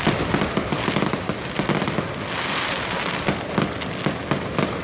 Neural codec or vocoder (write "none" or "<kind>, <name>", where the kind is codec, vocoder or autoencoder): none